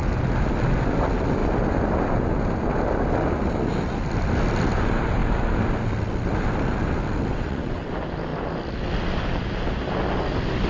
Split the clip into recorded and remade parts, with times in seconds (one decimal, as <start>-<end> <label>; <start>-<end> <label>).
0.0-7.3 recorded; 7.3-7.9 remade; 7.9-10.7 recorded